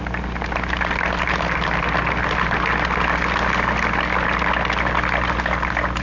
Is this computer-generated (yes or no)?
no